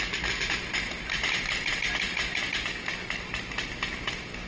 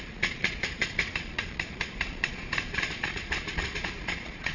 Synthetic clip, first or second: second